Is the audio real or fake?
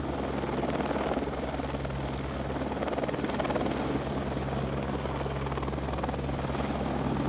real